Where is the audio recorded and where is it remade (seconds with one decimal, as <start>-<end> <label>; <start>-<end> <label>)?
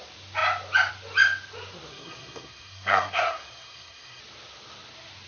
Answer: 0.0-1.9 recorded; 1.9-4.2 remade; 4.2-5.3 recorded